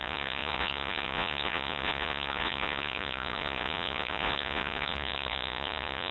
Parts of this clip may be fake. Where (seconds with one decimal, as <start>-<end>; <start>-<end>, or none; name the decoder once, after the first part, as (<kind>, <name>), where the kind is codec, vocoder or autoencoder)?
0.0-6.1 (vocoder, Vocos)